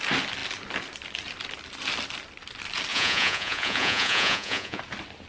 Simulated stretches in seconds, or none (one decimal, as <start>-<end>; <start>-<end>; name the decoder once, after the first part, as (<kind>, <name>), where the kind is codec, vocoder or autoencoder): 2.9-4.8 (vocoder, Vocos)